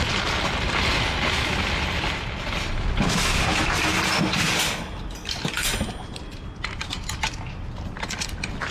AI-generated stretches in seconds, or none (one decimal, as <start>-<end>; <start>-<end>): none